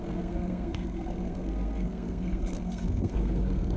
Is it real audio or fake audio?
fake